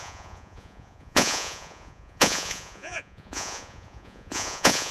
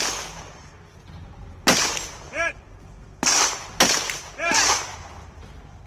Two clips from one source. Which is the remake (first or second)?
first